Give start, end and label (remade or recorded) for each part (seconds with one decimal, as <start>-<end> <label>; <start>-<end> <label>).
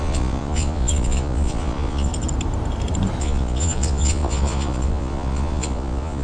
0.0-2.1 remade; 2.1-3.2 recorded; 3.2-6.2 remade